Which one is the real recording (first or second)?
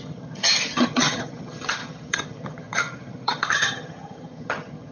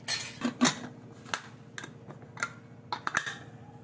second